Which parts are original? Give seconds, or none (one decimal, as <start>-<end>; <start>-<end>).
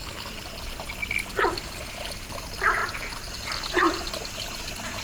0.5-5.0